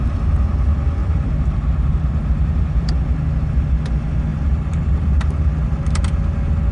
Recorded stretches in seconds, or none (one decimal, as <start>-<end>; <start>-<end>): 0.0-1.0; 2.9-4.3; 5.4-6.7